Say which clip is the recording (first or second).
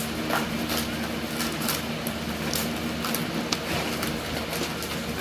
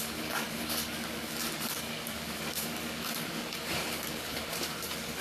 first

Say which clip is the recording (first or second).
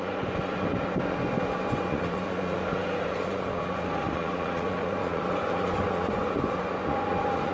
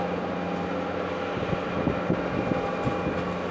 second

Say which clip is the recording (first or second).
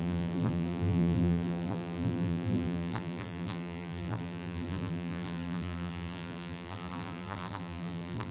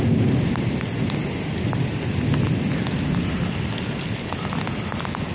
second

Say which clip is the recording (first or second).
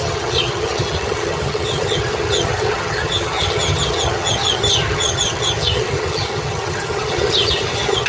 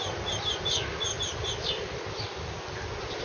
second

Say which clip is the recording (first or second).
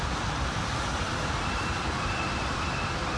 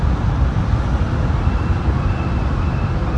second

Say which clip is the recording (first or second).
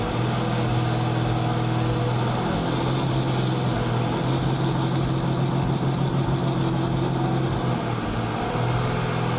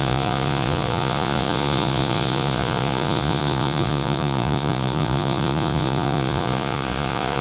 first